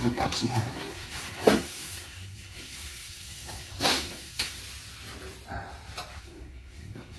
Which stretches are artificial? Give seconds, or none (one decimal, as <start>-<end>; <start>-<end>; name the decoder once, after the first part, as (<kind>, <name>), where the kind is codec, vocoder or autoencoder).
0.0-4.6 (codec, SNAC); 6.2-7.2